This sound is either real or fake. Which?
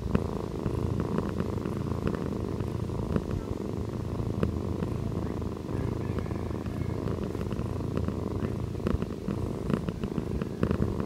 real